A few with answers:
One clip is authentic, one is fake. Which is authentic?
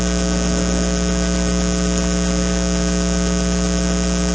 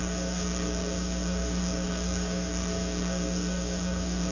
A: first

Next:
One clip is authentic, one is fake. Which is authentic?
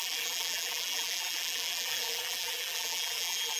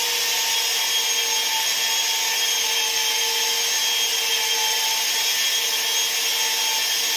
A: second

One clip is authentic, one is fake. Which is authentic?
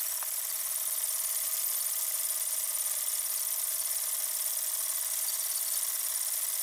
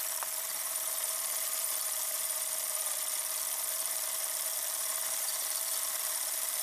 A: first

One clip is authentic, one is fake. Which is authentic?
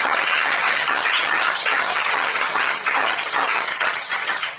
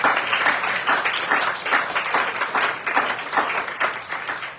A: second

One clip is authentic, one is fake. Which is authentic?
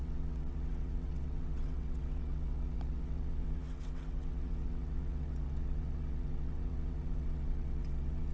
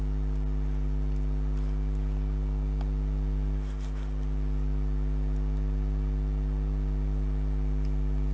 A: second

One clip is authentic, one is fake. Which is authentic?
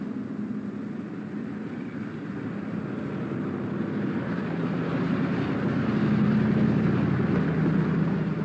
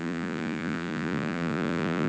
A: first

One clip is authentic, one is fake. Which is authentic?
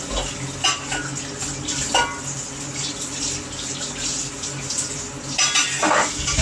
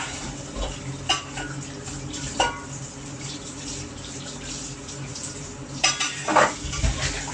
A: first